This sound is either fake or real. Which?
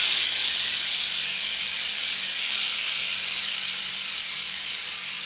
fake